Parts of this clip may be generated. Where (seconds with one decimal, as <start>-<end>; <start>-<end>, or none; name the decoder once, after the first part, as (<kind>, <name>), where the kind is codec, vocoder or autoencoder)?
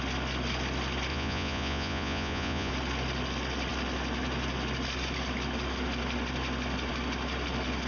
1.1-2.7 (vocoder, Vocos)